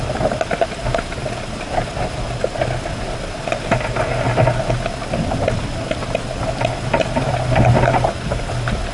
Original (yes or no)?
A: yes